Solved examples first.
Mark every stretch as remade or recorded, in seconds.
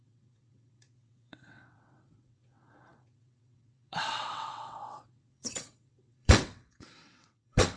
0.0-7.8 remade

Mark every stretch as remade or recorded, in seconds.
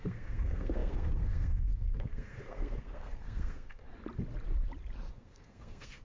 0.0-3.9 remade; 3.9-5.1 recorded; 5.1-6.0 remade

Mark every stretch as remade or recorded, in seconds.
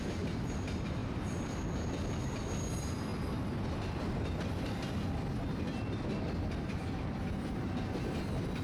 0.0-8.6 recorded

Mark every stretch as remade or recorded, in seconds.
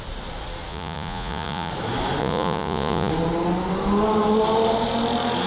0.0-0.7 recorded; 0.7-1.7 remade; 1.7-2.2 recorded; 2.2-3.1 remade; 3.1-5.5 recorded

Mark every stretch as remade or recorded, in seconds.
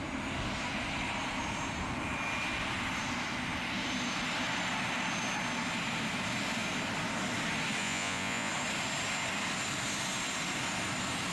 0.0-7.8 recorded; 7.8-8.5 remade; 8.5-11.3 recorded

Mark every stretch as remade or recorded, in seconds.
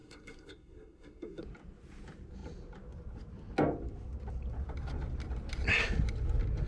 0.0-1.4 remade; 1.4-6.7 recorded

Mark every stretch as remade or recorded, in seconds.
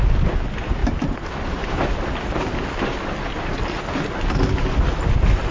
0.0-5.5 recorded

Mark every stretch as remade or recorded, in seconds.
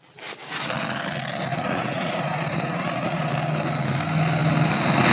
0.0-1.5 recorded; 1.5-3.3 remade; 3.3-5.1 recorded